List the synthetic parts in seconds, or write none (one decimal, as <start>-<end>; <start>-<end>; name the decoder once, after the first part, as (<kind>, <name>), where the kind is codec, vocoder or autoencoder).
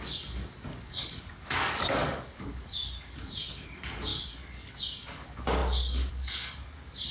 0.0-7.1 (codec, DAC)